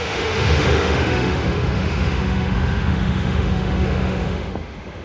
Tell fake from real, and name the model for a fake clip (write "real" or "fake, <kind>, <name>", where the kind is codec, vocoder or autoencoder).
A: fake, autoencoder, DAC-VAE